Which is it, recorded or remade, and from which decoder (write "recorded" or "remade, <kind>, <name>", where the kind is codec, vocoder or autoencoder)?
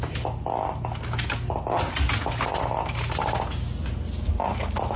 recorded